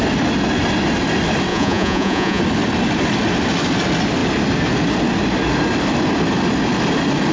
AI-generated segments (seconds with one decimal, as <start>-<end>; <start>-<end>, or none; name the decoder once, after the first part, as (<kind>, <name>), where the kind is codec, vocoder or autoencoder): 1.5-2.4 (vocoder, Vocos)